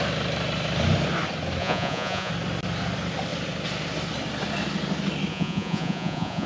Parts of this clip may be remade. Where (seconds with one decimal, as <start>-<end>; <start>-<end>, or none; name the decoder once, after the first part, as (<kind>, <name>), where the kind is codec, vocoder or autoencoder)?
1.6-2.3 (vocoder, Vocos); 5.3-6.5